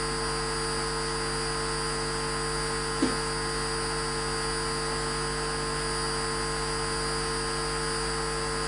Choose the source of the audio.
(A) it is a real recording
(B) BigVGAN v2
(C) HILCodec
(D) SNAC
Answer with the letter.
A